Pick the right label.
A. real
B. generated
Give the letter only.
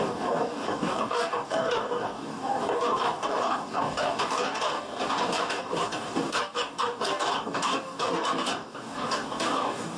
B